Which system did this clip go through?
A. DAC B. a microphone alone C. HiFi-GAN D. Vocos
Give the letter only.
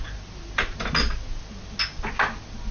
B